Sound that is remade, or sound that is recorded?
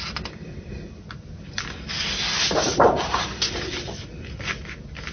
recorded